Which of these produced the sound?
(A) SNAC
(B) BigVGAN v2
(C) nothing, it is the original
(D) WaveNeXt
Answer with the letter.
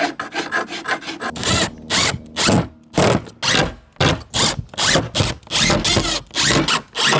C